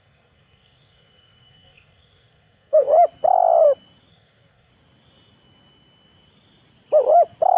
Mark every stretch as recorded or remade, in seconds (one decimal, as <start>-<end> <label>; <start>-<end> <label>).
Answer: 0.0-2.9 remade; 2.9-4.1 recorded; 4.1-4.7 remade; 4.7-7.6 recorded